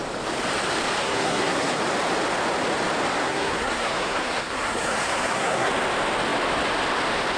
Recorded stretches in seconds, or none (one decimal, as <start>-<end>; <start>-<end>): 0.0-1.0; 1.8-3.2; 5.7-7.4